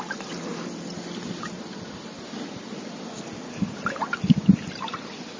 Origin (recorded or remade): recorded